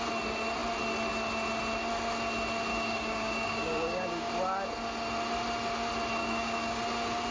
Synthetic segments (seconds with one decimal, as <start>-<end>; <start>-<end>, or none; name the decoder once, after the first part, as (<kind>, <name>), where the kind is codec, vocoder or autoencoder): 2.7-4.3 (codec, DAC); 6.2-6.8